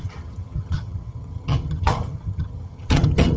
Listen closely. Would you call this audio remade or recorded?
remade